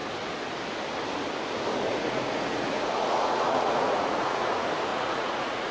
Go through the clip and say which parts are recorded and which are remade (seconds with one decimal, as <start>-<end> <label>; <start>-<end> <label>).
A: 0.0-1.9 recorded; 1.9-4.5 remade; 4.5-4.9 recorded; 4.9-5.7 remade